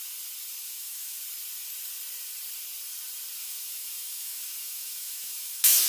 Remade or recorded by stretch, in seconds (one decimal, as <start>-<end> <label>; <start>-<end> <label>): 0.0-0.6 recorded; 0.6-1.2 remade; 1.2-3.4 recorded; 3.4-5.9 remade